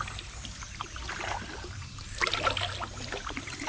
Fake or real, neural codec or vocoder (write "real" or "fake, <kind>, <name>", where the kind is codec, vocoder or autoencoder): real